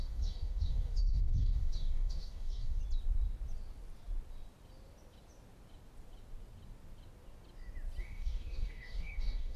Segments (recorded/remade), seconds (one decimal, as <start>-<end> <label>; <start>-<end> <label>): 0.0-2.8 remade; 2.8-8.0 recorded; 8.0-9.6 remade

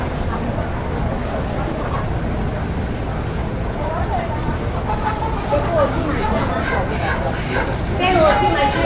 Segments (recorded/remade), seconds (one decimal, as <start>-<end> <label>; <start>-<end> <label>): 0.0-8.8 recorded

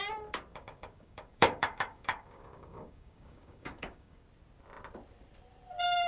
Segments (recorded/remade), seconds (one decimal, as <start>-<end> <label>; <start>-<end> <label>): 0.0-0.5 recorded; 0.5-4.2 remade; 4.2-6.1 recorded

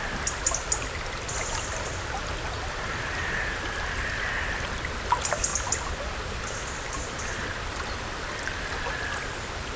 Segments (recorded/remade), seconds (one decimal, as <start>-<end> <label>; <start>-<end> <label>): 0.0-9.8 recorded

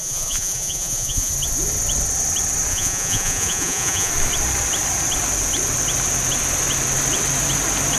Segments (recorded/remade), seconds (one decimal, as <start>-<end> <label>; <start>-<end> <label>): 0.0-1.3 remade; 1.3-2.7 recorded; 2.7-4.1 remade; 4.1-8.0 recorded